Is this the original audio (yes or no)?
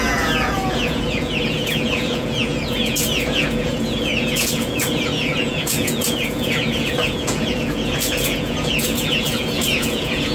no